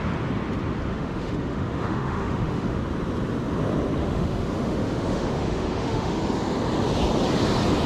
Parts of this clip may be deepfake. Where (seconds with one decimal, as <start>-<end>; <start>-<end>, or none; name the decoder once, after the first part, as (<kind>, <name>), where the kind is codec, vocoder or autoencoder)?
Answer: 0.9-2.8 (autoencoder, DAC-VAE); 4.0-6.2